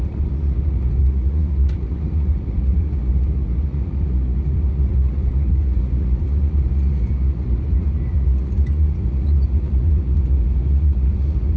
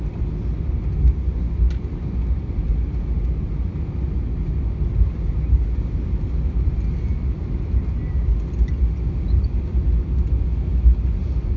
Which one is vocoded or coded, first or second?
first